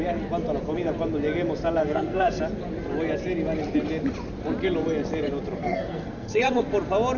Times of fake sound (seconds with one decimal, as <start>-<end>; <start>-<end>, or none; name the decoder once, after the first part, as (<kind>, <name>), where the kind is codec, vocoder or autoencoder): 1.8-2.4 (codec, SNAC); 5.6-6.6